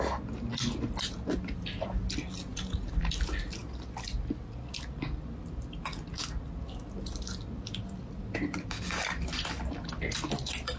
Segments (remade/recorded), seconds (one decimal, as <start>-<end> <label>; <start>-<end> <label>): 0.0-2.5 recorded; 2.5-3.0 remade; 3.0-10.8 recorded